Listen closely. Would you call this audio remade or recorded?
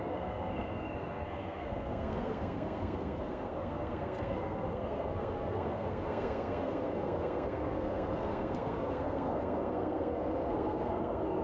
remade